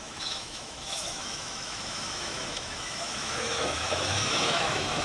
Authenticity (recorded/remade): remade